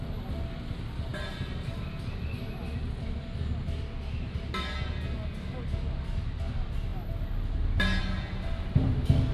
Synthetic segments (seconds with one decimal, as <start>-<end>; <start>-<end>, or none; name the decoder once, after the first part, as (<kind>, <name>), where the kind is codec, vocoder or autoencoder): none